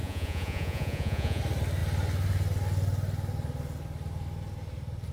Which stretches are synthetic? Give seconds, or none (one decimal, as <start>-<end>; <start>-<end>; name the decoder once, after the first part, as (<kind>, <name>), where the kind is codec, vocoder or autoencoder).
0.0-1.4 (vocoder, Vocos)